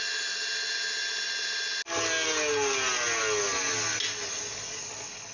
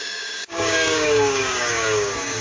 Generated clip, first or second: second